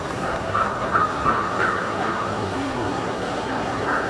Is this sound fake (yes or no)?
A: yes